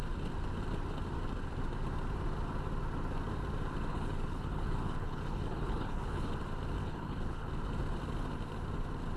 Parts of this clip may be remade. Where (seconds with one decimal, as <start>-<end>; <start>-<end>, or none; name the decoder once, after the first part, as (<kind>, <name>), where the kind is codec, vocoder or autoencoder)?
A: 3.9-6.3 (codec, HILCodec); 6.8-7.5